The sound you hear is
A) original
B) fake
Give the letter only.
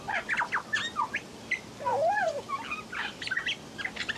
A